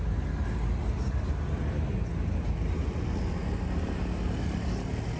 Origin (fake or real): real